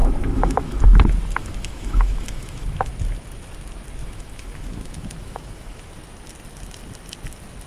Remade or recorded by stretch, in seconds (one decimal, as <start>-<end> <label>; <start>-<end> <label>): 0.0-0.8 remade; 0.8-1.4 recorded; 1.4-2.9 remade; 2.9-4.0 recorded; 4.0-5.9 remade; 5.9-7.7 recorded